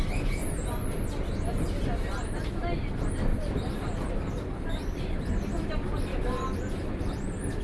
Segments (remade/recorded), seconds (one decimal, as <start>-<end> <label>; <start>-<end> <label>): 0.0-7.6 recorded